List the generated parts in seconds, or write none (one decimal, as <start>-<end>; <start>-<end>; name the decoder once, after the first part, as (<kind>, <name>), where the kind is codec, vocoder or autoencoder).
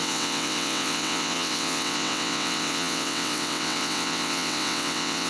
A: 0.0-5.3 (vocoder, WaveNeXt)